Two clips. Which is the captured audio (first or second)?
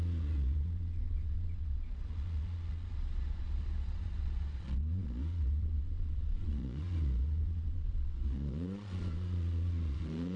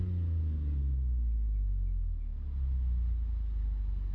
second